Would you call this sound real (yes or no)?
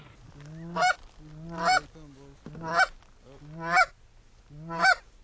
yes